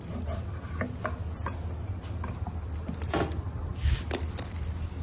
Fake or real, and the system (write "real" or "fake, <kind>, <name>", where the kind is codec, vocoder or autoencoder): real